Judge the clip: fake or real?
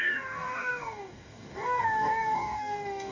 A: fake